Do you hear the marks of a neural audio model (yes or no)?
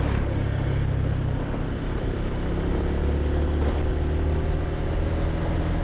no